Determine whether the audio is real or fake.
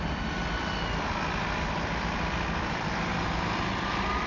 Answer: fake